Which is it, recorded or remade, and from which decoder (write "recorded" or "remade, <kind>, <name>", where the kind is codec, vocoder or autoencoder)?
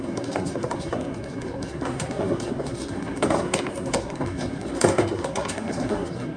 remade, codec, SNAC